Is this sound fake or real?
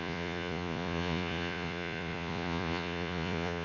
fake